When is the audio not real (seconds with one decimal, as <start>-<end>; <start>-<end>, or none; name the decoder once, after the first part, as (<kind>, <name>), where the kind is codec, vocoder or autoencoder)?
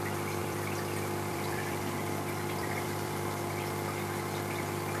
0.4-3.4 (vocoder, BigVGAN v2)